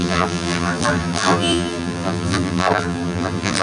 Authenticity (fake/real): fake